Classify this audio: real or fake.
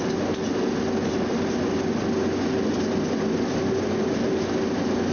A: real